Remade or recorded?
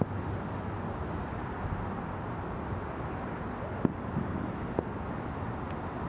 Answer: recorded